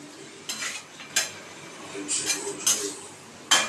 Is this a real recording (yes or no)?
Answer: yes